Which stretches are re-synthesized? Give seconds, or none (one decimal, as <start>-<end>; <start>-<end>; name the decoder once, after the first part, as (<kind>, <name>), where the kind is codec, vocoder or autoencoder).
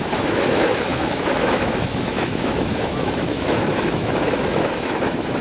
0.0-5.4 (autoencoder, DAC-VAE)